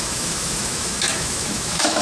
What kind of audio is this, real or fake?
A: fake